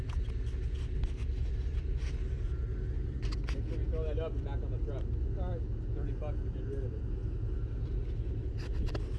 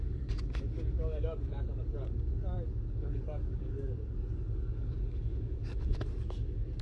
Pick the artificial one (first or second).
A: second